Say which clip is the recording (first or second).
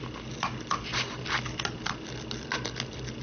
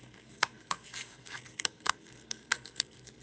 first